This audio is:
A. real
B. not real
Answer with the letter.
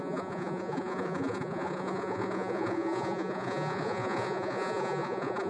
B